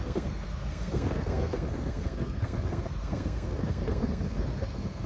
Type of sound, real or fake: fake